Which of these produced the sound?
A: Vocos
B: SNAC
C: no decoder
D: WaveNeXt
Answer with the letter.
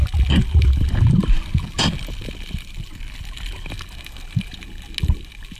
C